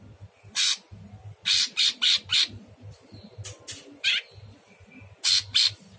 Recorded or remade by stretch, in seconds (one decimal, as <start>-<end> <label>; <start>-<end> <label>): 0.0-6.0 recorded